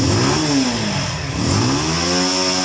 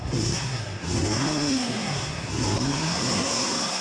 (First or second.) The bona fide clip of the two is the first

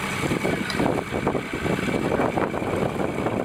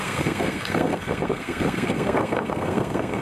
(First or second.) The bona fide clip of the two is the first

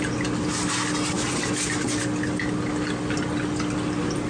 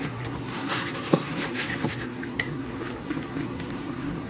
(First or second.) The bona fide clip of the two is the first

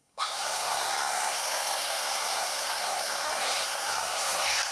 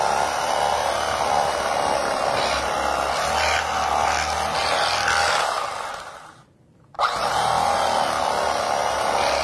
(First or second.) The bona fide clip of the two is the second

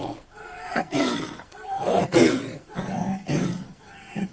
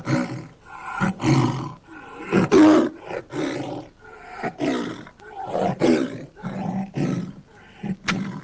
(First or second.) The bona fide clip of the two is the second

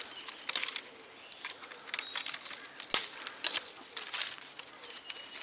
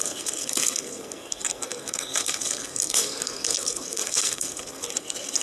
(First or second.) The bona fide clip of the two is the first